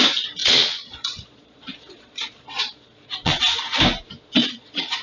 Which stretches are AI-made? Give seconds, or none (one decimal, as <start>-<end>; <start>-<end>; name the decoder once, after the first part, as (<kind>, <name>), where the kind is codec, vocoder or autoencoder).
0.4-3.4 (vocoder, Vocos); 4.4-5.0

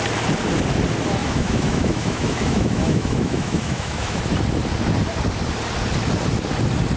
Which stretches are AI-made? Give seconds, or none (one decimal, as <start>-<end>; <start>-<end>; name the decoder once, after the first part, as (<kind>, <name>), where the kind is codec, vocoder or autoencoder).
1.2-4.2 (autoencoder, DAC-VAE)

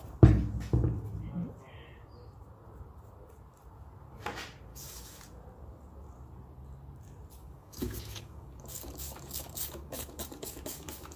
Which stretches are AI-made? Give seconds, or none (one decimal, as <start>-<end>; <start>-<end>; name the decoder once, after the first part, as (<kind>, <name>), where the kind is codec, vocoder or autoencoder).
4.7-5.2 (codec, DAC); 7.4-11.2

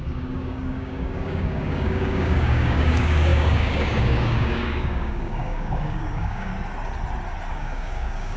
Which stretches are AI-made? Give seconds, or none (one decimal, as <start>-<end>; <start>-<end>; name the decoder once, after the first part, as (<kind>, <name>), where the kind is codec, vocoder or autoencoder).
0.0-6.5 (codec, DAC); 7.5-8.4

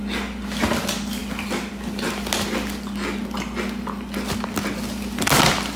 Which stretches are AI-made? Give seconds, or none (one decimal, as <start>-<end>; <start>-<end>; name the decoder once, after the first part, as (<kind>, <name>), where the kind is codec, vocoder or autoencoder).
none

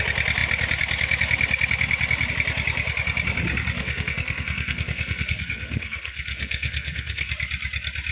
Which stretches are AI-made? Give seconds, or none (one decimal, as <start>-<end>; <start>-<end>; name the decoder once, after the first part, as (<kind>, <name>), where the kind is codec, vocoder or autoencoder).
3.8-7.3 (codec, SNAC)

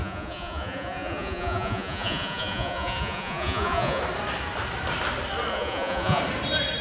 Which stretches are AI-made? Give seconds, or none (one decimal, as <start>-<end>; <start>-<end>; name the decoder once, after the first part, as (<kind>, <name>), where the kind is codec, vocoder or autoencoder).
0.0-4.0 (vocoder, Vocos); 5.5-6.2